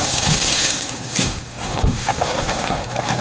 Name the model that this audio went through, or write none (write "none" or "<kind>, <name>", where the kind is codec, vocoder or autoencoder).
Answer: codec, SNAC